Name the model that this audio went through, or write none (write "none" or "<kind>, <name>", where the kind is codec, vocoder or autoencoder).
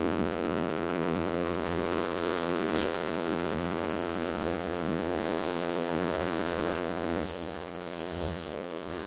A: vocoder, Vocos